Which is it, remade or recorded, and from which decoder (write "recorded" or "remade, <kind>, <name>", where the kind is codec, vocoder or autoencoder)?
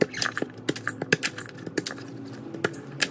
recorded